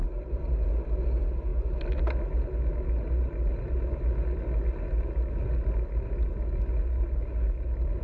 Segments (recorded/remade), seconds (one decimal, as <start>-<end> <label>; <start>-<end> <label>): 0.0-8.0 recorded